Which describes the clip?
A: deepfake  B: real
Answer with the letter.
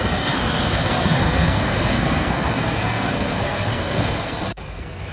A